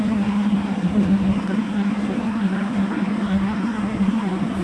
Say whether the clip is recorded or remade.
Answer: remade